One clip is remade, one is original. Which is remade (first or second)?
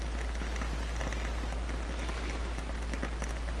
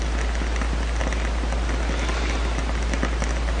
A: first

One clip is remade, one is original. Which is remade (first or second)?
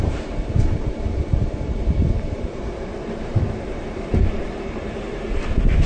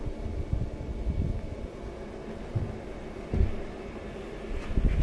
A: first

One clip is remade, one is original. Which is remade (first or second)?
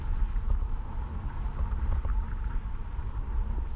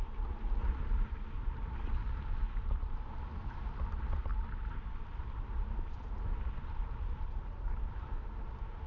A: second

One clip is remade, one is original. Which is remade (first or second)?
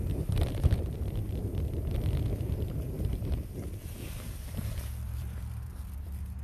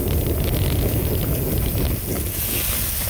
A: first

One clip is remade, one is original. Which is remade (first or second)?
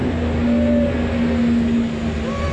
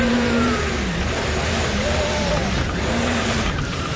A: second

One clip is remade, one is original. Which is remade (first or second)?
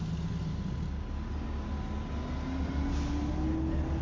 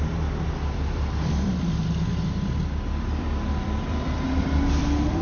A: second